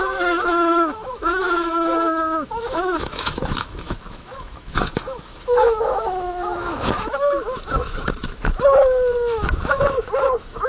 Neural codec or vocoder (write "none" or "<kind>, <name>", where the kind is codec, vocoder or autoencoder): autoencoder, DAC-VAE